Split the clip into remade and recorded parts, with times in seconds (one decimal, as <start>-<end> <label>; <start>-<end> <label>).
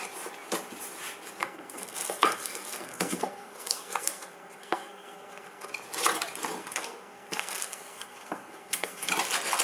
0.0-1.4 recorded; 1.4-5.7 remade; 5.7-6.6 recorded; 6.6-9.1 remade; 9.1-9.6 recorded